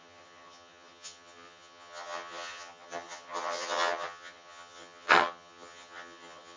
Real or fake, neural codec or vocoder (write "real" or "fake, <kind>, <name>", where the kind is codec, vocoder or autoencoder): fake, vocoder, HiFi-GAN